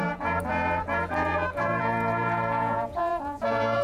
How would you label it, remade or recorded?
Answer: remade